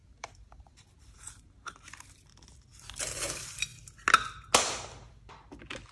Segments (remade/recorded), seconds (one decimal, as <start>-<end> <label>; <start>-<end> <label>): 0.0-2.1 remade; 2.1-5.9 recorded